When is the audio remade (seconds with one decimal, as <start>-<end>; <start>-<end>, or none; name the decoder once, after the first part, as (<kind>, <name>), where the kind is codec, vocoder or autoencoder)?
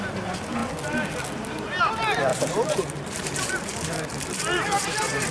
2.3-5.3 (vocoder, BigVGAN v2)